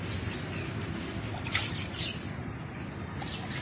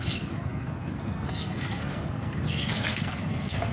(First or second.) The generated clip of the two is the second